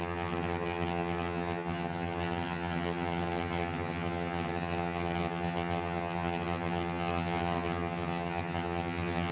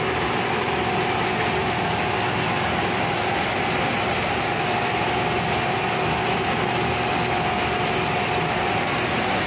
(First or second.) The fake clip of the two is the first